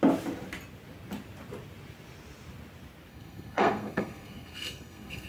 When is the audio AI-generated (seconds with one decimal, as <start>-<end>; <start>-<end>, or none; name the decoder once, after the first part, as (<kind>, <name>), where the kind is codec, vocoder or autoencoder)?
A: 3.1-5.3 (codec, SNAC)